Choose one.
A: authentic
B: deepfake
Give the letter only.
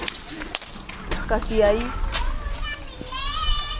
A